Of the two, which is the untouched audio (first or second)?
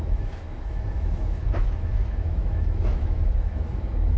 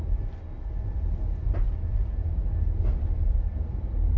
second